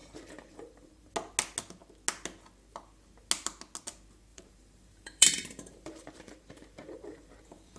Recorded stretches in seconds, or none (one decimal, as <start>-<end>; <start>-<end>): 1.1-4.3